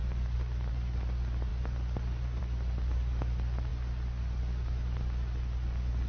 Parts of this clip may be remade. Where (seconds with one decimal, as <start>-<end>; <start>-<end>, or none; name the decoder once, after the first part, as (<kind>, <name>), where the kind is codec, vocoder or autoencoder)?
none

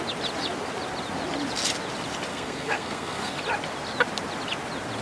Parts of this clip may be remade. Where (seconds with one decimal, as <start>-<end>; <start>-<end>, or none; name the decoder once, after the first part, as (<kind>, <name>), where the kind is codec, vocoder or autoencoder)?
2.3-3.4 (codec, SNAC)